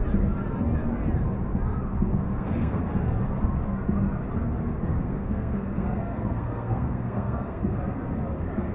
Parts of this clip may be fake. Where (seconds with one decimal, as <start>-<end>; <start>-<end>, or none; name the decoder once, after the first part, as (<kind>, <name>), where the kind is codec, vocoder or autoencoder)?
2.1-2.8 (codec, SNAC); 5.0-7.6